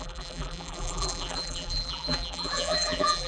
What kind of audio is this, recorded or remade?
remade